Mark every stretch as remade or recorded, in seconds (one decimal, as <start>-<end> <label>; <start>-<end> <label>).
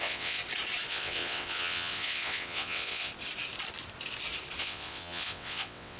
0.0-0.4 remade; 0.4-0.9 recorded; 0.9-3.1 remade; 3.1-4.6 recorded; 4.6-6.0 remade